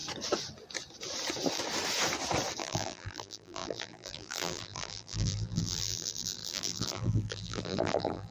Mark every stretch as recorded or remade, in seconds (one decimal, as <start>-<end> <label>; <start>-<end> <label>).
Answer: 0.0-2.6 recorded; 2.6-8.3 remade